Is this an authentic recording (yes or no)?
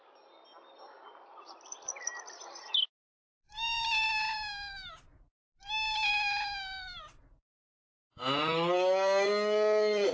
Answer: yes